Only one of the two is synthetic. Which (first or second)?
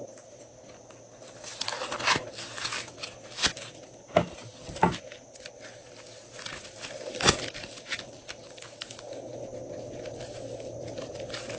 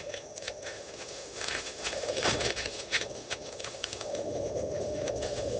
second